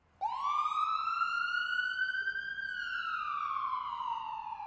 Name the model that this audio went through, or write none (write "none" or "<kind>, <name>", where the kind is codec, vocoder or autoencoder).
none